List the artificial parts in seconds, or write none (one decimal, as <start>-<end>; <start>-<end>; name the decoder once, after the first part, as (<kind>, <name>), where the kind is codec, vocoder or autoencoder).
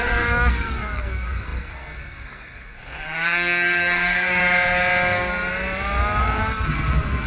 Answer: 0.0-4.4 (codec, SNAC); 6.2-7.3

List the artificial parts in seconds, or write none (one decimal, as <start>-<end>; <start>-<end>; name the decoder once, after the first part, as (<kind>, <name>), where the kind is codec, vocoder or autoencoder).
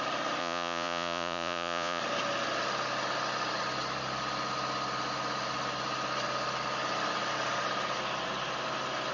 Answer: 0.4-2.0 (vocoder, Vocos)